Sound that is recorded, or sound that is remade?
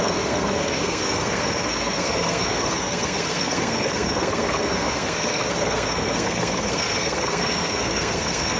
remade